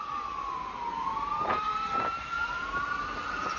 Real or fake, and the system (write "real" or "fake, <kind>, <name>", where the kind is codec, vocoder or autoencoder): real